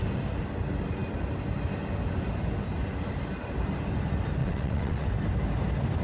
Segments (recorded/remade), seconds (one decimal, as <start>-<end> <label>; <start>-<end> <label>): 0.0-4.4 recorded; 4.4-5.1 remade; 5.1-6.0 recorded